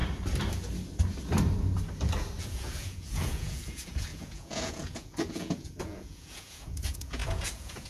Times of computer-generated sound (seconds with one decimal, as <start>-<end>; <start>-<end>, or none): 2.4-7.9